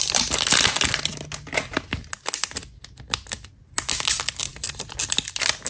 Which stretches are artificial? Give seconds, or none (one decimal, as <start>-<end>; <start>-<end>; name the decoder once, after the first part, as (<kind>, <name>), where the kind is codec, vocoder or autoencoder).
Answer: none